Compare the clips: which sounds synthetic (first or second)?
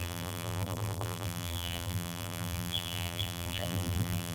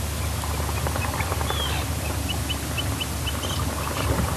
first